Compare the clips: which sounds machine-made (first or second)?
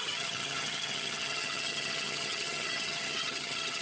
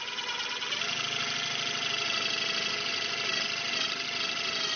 first